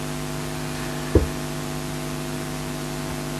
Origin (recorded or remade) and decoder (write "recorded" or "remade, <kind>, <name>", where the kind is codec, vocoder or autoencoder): recorded